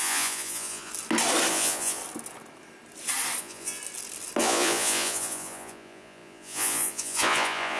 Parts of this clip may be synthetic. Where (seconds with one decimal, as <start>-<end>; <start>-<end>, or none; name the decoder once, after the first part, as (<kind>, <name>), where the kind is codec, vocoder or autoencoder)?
0.0-0.9 (vocoder, Vocos); 1.5-2.0; 3.4-3.8; 4.4-7.8